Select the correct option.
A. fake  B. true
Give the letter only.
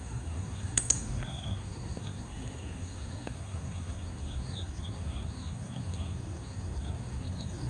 A